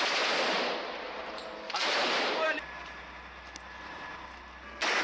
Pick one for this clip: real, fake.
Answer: real